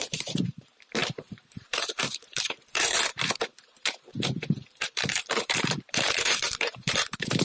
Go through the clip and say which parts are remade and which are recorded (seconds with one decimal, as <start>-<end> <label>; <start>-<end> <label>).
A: 0.0-7.4 remade